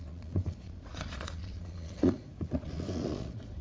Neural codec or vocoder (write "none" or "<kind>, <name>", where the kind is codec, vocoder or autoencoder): vocoder, Vocos